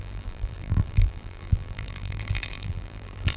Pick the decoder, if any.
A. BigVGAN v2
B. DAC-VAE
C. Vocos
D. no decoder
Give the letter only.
A